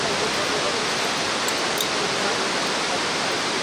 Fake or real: real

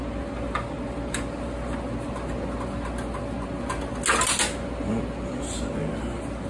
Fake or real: real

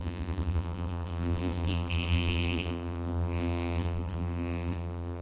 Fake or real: fake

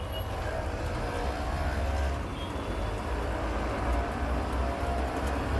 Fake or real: real